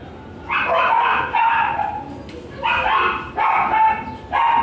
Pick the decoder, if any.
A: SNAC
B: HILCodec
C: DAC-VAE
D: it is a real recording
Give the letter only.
D